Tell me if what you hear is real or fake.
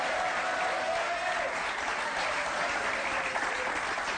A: real